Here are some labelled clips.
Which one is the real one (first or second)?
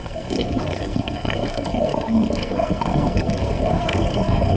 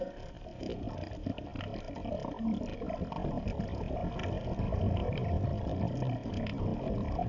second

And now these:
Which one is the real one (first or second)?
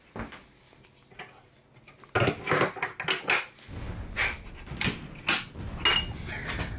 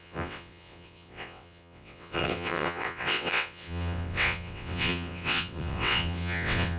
first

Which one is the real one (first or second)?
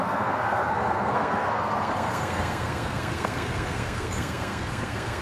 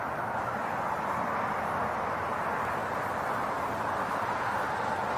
second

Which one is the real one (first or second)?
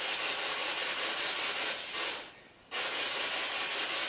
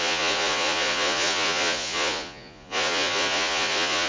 first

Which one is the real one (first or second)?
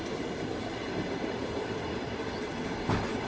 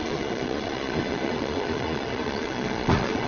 first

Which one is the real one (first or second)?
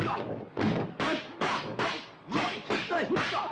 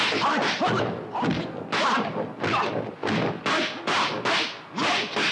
second